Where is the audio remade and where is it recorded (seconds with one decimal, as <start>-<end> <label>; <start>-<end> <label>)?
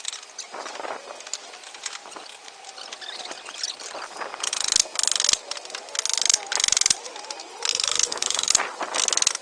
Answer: 0.0-7.7 recorded; 7.7-8.5 remade; 8.5-9.4 recorded